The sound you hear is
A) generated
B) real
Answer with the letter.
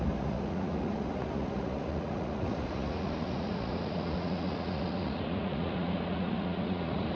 A